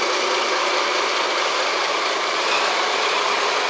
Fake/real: real